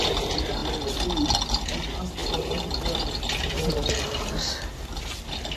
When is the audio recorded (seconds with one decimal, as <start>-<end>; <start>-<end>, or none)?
0.0-5.6